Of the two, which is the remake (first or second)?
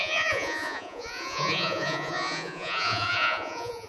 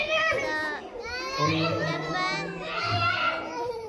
first